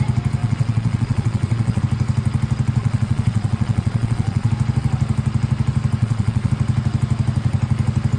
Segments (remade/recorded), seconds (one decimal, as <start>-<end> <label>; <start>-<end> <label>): 0.0-0.4 recorded; 0.4-1.8 remade; 1.8-2.8 recorded; 2.8-4.5 remade; 4.5-6.0 recorded; 6.0-6.5 remade; 6.5-8.2 recorded